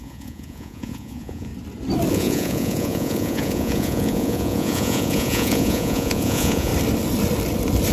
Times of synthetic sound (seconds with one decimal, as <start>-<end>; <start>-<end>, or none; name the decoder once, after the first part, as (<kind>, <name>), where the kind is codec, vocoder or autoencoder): 0.0-1.5 (vocoder, Vocos); 2.1-6.7